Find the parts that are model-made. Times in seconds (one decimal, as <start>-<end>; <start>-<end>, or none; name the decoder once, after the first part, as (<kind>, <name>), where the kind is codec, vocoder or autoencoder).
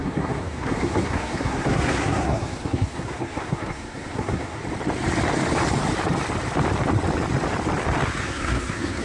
0.0-4.6 (codec, SNAC); 8.2-9.0